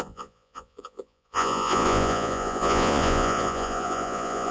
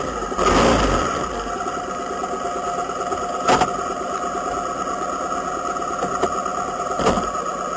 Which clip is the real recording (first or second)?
second